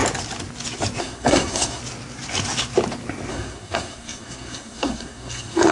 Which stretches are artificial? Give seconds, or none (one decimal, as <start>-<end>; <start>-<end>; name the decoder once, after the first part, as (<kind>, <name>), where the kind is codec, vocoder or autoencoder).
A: 1.0-1.8 (codec, SNAC); 3.3-5.7